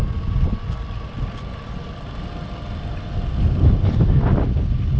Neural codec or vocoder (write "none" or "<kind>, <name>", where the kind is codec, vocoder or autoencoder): none